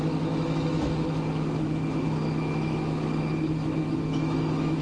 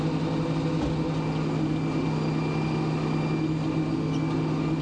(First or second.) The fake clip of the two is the first